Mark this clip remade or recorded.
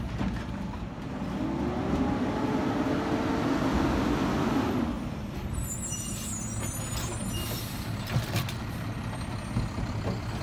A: recorded